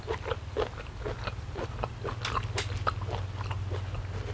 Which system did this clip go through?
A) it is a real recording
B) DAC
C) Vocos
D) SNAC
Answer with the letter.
A